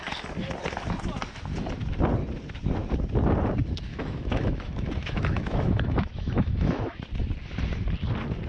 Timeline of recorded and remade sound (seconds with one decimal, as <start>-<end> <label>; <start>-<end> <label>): 0.0-3.9 recorded; 3.9-6.8 remade; 6.8-8.5 recorded